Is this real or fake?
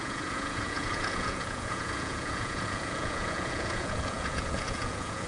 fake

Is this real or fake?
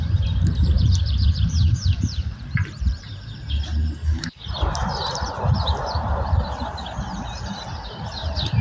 fake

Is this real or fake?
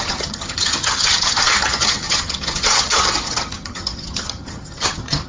fake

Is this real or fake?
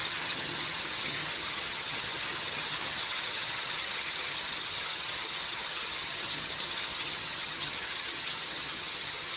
fake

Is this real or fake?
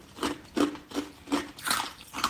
real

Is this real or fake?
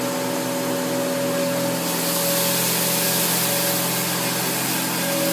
real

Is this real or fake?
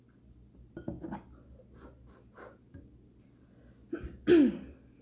real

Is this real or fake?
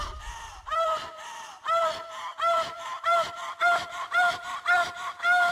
fake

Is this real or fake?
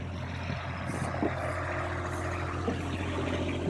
real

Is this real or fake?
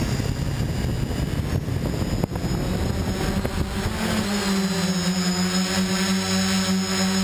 real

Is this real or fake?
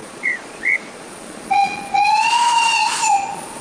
fake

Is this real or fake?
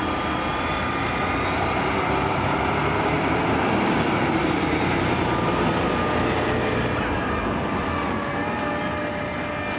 real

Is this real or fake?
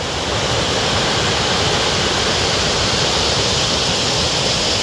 fake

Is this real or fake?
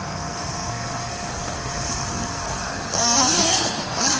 fake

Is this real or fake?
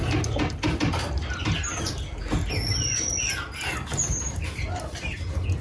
real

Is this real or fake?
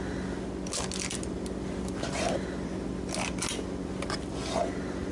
real